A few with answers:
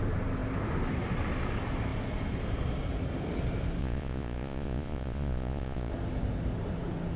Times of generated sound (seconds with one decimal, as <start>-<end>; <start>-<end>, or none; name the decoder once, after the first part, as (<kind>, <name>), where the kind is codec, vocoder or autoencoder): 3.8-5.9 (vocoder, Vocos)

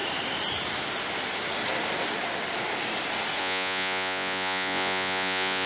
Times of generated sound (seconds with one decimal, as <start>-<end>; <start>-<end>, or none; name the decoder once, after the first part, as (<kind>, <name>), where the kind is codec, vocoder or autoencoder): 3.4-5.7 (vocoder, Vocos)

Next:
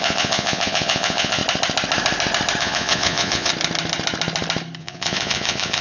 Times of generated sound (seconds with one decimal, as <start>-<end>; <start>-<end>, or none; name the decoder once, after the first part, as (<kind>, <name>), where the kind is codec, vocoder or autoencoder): 0.0-1.4 (vocoder, Vocos); 2.6-3.5; 4.8-5.8

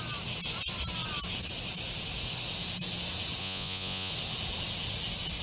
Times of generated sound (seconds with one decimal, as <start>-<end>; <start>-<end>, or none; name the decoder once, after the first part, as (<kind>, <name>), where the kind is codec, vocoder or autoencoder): 3.4-4.1 (vocoder, Vocos)

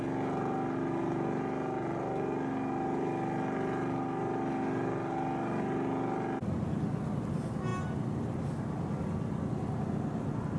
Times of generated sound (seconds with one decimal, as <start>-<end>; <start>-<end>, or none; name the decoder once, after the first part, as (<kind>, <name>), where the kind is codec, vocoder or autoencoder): none

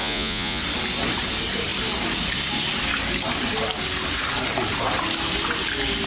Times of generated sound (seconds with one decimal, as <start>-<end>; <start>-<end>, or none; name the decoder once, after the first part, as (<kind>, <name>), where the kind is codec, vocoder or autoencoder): 0.0-0.6 (vocoder, Vocos)